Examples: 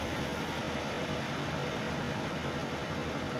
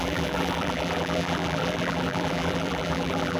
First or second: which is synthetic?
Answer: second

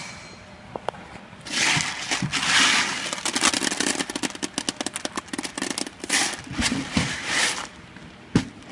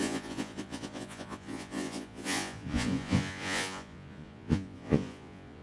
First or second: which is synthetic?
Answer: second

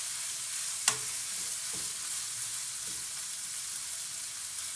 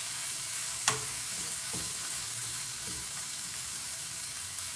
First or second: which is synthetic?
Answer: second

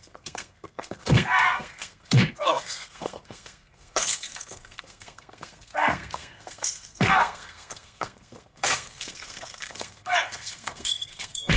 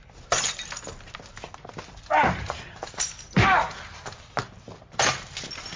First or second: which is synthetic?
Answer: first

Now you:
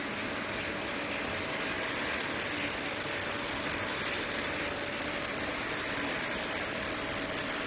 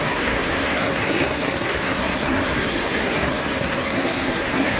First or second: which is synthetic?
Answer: second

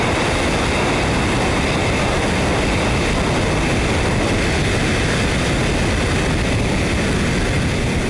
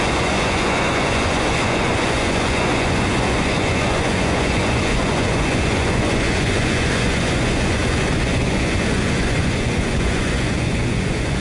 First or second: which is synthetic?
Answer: second